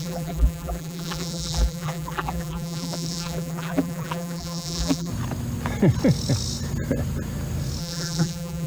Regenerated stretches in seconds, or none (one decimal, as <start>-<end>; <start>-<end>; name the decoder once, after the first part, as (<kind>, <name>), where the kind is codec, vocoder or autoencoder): 0.0-5.1 (vocoder, BigVGAN v2); 7.8-8.7